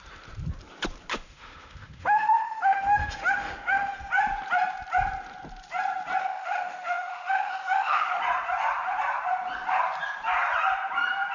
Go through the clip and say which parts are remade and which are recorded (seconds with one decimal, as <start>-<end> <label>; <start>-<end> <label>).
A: 0.0-1.1 recorded; 1.1-4.1 remade; 4.1-6.2 recorded; 6.2-8.2 remade; 8.2-11.3 recorded